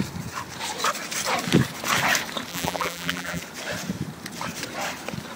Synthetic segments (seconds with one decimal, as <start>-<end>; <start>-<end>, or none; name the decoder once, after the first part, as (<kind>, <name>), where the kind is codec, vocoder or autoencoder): 2.5-3.4 (vocoder, BigVGAN v2)